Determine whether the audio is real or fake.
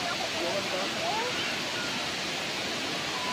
real